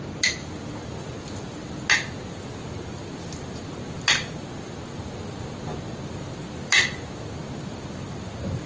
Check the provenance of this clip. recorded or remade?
recorded